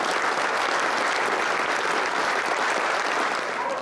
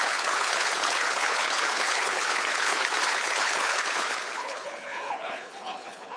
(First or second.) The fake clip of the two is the second